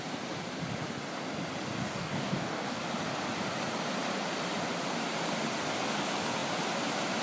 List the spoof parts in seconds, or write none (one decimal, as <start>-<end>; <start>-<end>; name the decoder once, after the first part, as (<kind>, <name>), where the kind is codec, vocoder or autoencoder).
1.8-2.8 (codec, DAC)